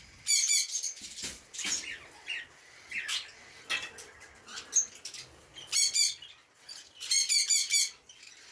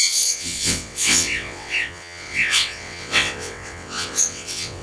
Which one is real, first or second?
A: first